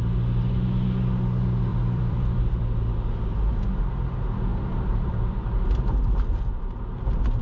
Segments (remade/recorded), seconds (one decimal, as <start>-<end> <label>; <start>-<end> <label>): 0.0-1.7 recorded; 1.7-3.3 remade; 3.3-4.5 recorded; 4.5-6.6 remade; 6.6-7.4 recorded